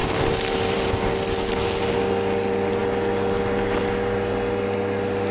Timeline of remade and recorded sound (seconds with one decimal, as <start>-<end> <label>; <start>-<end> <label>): 0.0-0.9 remade; 0.9-5.3 recorded